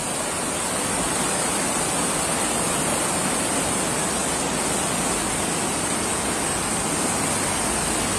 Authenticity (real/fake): real